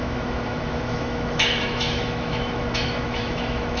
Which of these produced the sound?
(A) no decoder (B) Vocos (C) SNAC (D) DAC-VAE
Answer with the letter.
D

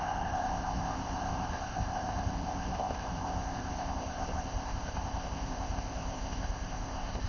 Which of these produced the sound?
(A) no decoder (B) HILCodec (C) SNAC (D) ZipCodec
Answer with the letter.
D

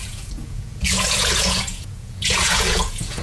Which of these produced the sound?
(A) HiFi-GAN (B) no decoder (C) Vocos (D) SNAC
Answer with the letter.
C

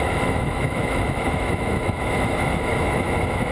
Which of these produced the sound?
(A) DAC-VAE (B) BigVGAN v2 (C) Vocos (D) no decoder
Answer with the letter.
A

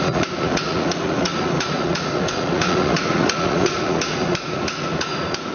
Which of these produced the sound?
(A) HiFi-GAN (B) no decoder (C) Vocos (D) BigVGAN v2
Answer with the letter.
C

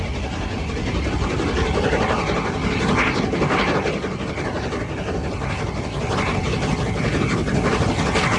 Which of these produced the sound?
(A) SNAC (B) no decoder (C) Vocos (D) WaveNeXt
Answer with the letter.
B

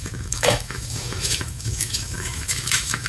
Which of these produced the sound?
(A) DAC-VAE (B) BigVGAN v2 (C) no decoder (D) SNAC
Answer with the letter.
A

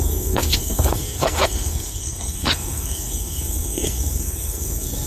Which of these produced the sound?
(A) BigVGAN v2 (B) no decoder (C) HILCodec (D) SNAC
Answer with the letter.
D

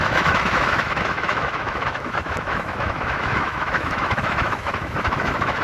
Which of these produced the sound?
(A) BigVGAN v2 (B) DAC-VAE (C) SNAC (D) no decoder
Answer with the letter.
B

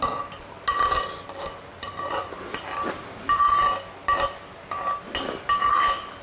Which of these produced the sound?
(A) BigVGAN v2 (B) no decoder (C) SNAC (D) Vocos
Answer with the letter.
B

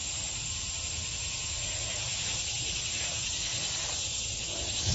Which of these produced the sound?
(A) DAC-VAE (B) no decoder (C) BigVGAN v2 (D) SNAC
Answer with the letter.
B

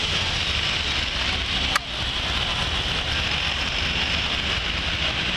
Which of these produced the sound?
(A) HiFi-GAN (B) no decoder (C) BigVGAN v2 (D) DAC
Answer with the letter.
B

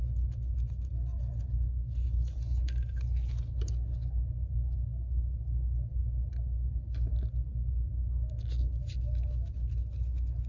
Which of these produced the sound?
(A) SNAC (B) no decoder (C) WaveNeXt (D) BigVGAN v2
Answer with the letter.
B